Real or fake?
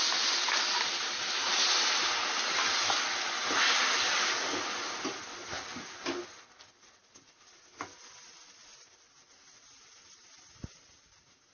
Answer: real